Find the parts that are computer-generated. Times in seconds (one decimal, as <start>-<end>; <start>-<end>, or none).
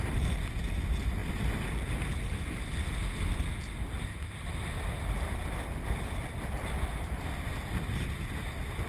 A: none